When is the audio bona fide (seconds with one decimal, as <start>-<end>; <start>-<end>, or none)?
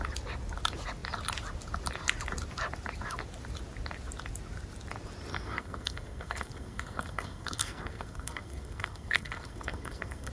0.0-5.3